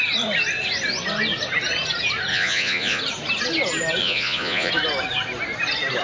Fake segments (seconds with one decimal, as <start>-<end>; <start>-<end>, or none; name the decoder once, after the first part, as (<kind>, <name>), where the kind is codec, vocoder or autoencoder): 2.3-3.0 (vocoder, Vocos); 4.0-4.7

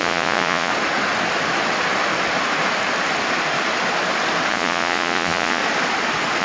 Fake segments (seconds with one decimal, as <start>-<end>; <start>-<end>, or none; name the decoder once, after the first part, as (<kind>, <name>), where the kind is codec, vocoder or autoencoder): 0.0-0.7 (vocoder, Vocos); 4.5-5.6

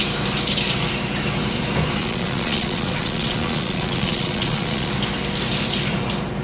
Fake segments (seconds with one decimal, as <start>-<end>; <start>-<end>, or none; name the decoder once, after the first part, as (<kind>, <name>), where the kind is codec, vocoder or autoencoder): 2.0-4.9 (vocoder, Vocos)

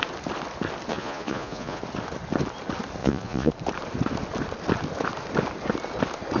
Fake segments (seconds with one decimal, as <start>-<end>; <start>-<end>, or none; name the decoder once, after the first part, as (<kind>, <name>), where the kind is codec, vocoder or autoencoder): 0.9-1.8 (vocoder, Vocos); 3.0-3.5

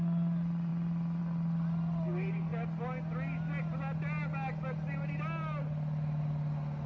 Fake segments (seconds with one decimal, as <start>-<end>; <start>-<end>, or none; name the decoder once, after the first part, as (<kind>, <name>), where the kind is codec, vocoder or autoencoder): none

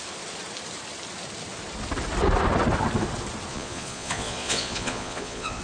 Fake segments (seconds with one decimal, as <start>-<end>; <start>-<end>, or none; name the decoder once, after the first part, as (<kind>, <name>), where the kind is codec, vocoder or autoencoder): 3.5-5.6 (vocoder, Vocos)

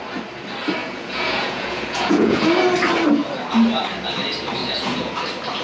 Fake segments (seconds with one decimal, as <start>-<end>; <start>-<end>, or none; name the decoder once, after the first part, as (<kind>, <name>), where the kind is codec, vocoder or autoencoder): 0.8-2.4 (vocoder, Vocos); 4.6-5.1